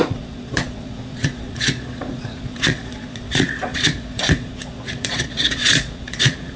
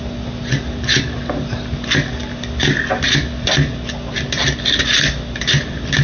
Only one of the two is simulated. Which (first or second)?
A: first